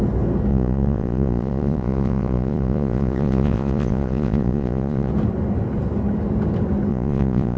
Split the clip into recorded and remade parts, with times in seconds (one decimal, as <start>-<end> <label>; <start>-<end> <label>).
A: 0.0-0.5 recorded; 0.5-5.1 remade; 5.1-6.9 recorded; 6.9-7.6 remade